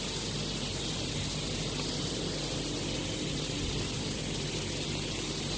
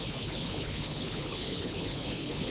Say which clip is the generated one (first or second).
second